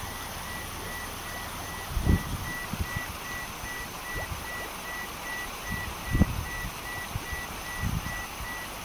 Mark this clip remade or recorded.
recorded